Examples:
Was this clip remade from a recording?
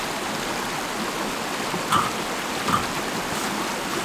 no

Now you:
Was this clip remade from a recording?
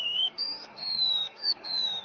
yes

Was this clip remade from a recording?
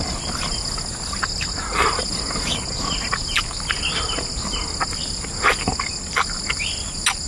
no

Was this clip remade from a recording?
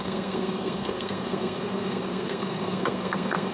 yes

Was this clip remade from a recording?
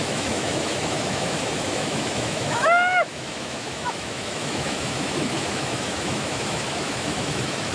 yes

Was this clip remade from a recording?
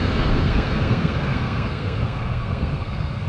yes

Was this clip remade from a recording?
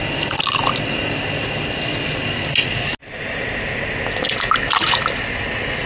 no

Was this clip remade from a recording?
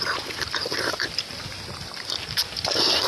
no